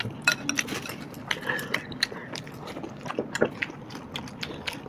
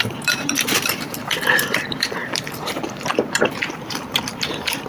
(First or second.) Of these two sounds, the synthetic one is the second